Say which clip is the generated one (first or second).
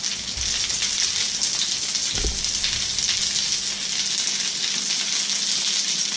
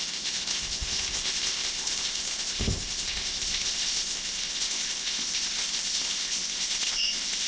second